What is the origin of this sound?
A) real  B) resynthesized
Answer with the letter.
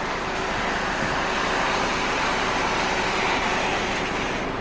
A